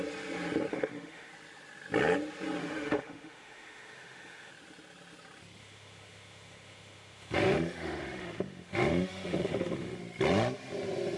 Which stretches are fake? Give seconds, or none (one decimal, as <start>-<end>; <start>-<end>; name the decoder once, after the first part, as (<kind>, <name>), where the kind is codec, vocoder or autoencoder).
0.7-1.3 (autoencoder, DAC-VAE); 2.6-4.5; 5.6-10.0